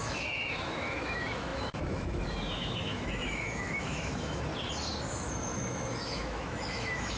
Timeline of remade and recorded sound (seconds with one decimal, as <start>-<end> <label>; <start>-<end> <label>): 0.0-4.5 remade; 4.5-5.1 recorded; 5.1-7.2 remade